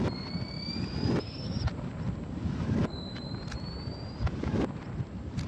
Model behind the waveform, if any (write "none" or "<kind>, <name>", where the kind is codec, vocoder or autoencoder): none